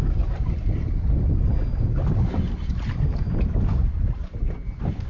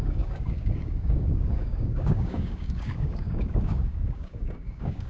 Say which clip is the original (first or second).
first